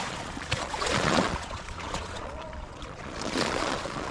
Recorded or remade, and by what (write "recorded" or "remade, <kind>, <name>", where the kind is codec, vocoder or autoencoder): remade, vocoder, Vocos